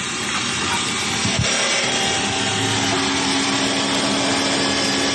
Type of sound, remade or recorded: recorded